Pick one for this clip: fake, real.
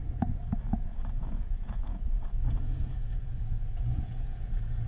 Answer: fake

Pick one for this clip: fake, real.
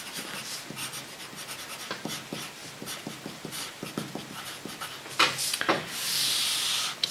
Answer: real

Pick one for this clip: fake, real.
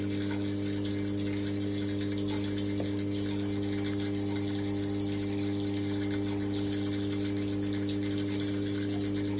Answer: real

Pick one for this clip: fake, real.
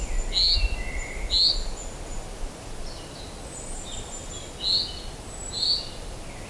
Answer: real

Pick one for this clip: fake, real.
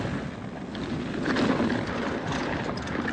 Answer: real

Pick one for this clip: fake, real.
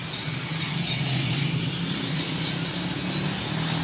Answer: real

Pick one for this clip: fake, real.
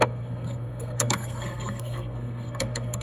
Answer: fake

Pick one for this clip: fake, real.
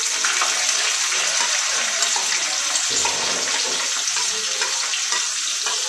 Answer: real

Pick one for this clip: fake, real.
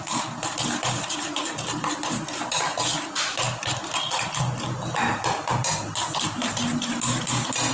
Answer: real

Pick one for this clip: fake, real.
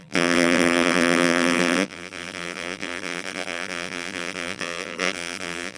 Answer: fake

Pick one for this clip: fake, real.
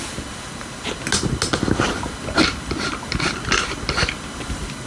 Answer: real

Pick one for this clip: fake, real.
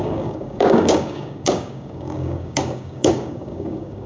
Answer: fake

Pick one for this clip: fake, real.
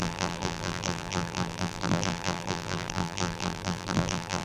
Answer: fake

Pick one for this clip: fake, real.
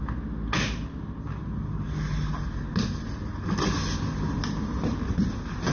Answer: real